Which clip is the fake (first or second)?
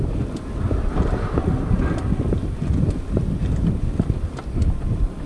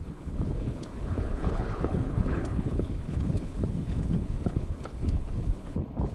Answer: second